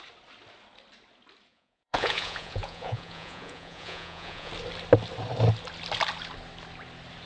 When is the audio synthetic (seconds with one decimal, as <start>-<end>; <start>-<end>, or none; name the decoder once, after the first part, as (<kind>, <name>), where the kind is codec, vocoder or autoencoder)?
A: 1.5-4.5 (vocoder, Vocos)

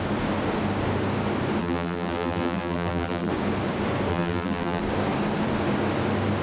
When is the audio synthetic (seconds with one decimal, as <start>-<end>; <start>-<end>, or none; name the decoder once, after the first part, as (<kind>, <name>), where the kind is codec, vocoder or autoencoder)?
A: 1.6-3.3 (vocoder, BigVGAN v2); 4.1-4.8